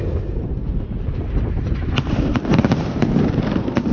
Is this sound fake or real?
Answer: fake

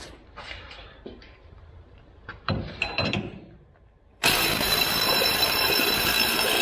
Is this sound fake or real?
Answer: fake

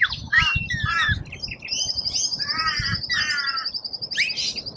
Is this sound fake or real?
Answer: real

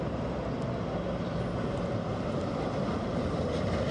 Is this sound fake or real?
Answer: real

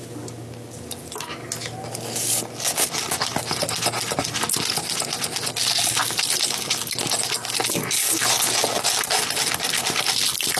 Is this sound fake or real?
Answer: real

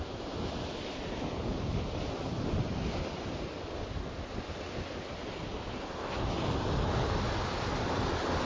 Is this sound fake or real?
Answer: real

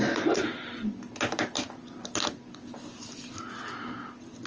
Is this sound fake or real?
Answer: real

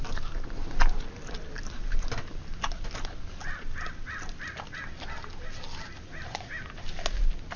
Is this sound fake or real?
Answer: real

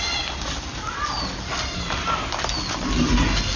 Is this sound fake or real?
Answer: real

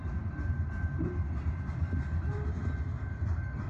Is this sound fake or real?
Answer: real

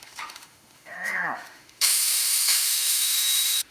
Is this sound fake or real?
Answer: fake